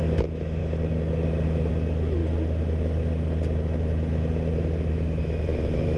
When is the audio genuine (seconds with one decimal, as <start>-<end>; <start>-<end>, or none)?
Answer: 0.6-1.7; 2.2-4.9